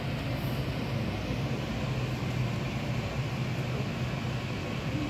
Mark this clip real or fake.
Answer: real